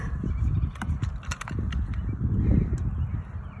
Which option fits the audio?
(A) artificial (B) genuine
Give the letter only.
B